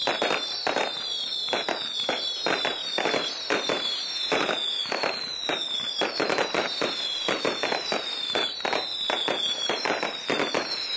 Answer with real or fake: real